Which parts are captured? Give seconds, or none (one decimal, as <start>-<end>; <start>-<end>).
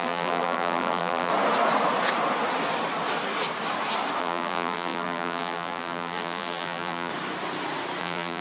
1.3-4.2; 7.1-8.0